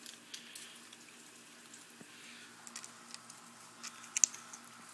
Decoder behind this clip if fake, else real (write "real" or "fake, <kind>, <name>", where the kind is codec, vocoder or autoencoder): real